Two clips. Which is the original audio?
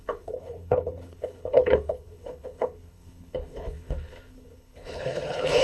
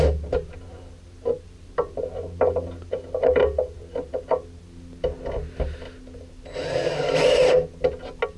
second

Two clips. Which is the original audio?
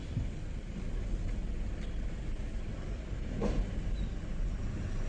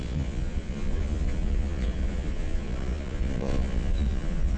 first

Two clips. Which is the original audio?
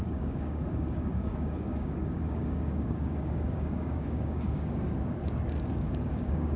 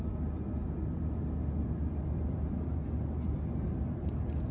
second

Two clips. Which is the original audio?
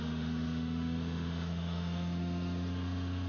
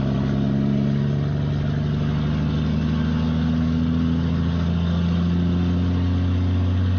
second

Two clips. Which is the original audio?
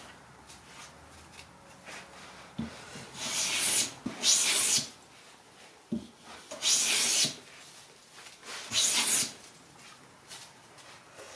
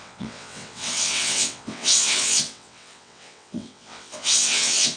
first